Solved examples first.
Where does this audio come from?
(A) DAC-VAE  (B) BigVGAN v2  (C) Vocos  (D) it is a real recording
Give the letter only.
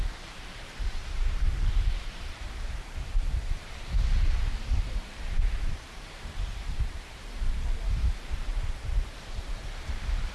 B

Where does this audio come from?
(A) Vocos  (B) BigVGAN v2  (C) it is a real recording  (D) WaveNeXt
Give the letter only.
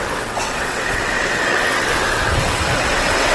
D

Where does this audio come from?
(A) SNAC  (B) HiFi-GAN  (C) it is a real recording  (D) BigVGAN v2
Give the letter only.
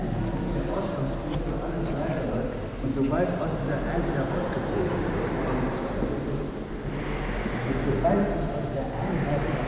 C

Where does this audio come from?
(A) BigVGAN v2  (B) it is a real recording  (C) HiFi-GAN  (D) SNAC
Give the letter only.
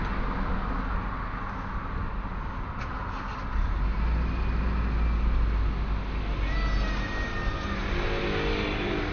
B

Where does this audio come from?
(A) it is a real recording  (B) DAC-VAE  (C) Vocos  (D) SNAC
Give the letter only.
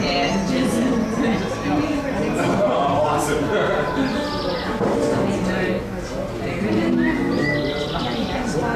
A